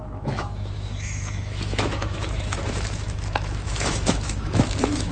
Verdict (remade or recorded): remade